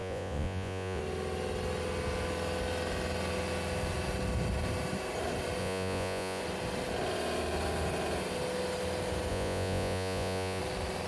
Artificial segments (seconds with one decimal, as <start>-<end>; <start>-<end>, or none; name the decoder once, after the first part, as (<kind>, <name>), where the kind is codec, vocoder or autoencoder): 0.0-1.0 (vocoder, Vocos); 5.6-6.4; 9.3-10.6